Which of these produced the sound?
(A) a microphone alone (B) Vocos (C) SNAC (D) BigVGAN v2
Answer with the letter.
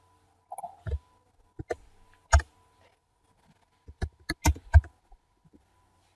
A